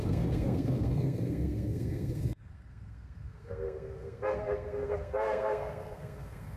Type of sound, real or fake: fake